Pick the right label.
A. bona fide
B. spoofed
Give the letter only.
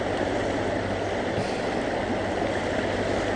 A